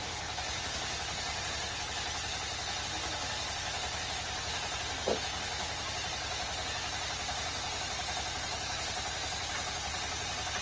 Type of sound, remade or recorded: recorded